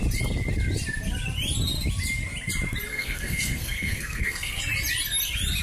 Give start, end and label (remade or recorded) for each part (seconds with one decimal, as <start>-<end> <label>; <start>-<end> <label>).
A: 0.0-2.9 recorded; 2.9-4.6 remade; 4.6-5.6 recorded